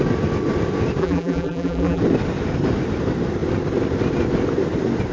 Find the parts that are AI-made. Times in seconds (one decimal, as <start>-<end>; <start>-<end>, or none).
1.0-2.0